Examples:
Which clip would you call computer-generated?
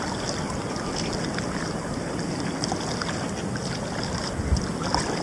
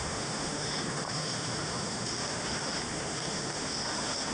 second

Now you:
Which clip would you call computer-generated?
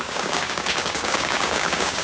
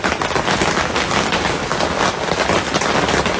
first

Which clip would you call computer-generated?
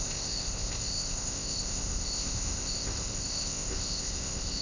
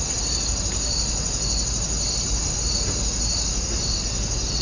first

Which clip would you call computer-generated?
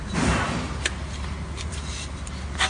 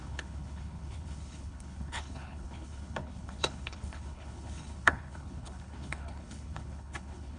second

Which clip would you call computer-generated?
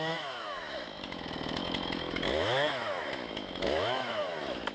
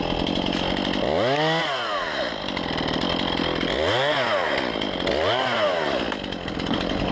first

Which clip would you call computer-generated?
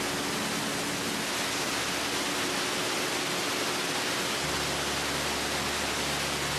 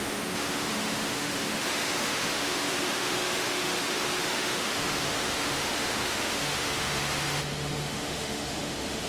second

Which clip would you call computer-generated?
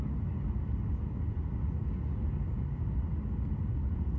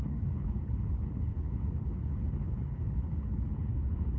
second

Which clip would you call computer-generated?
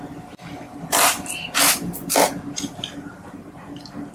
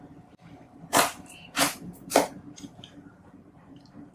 second